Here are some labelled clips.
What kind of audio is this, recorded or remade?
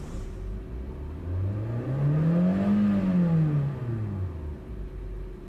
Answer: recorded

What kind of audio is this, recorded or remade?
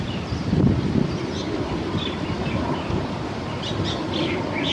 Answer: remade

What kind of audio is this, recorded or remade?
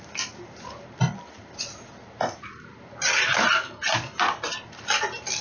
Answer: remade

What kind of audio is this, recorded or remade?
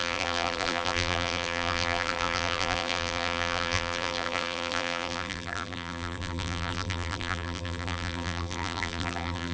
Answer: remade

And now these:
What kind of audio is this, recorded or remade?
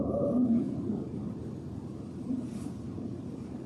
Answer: remade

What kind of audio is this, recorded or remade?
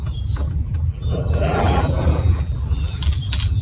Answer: remade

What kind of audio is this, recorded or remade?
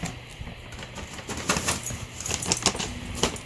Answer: recorded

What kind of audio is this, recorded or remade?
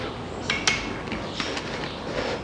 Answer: recorded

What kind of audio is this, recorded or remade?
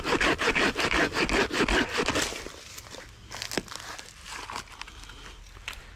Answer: recorded